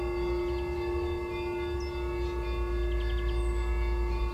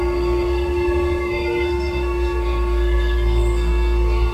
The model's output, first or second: second